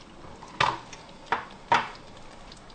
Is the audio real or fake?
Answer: real